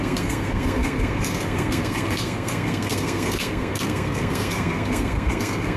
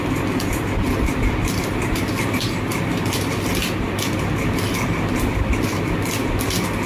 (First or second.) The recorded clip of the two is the second